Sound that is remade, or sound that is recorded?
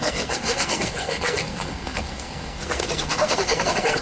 remade